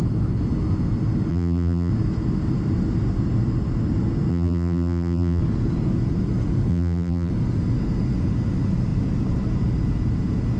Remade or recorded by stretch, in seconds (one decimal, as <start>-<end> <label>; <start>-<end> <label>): 0.0-1.3 recorded; 1.3-1.9 remade; 1.9-4.3 recorded; 4.3-5.4 remade; 5.4-6.7 recorded; 6.7-7.3 remade; 7.3-10.6 recorded